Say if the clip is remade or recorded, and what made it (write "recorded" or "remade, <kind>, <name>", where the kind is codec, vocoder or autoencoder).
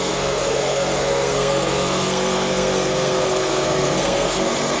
remade, codec, SNAC